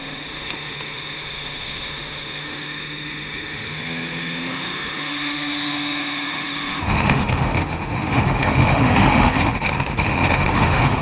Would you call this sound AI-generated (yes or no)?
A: yes